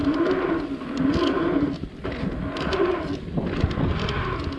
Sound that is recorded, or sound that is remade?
recorded